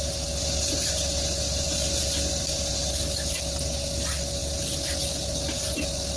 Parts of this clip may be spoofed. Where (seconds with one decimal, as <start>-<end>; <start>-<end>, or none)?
none